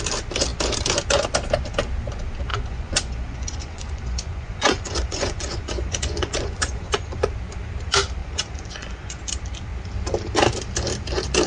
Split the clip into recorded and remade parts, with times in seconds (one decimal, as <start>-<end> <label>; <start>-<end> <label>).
0.0-2.5 recorded; 2.5-7.3 remade; 7.3-8.2 recorded; 8.2-9.2 remade; 9.2-11.5 recorded

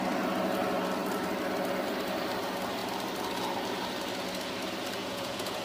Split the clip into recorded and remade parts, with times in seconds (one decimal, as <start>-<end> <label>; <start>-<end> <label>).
0.0-5.0 recorded; 5.0-5.6 remade

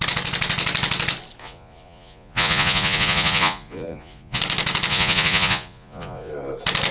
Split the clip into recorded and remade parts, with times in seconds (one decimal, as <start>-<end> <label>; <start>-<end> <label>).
0.0-1.4 recorded; 1.4-4.4 remade; 4.4-4.9 recorded; 4.9-6.3 remade; 6.3-6.9 recorded

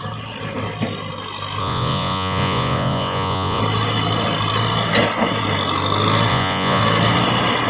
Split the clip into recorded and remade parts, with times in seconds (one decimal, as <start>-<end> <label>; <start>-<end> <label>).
0.0-1.6 recorded; 1.6-3.6 remade; 3.6-6.3 recorded; 6.3-6.8 remade; 6.8-7.7 recorded